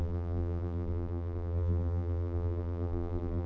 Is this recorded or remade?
remade